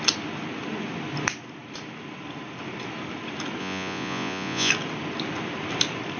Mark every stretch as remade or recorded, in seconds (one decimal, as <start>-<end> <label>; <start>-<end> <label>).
0.0-3.6 recorded; 3.6-4.7 remade; 4.7-6.2 recorded